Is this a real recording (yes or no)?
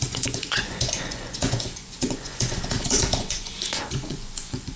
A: no